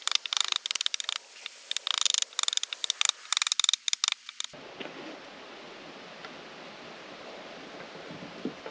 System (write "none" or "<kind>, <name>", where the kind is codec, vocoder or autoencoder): none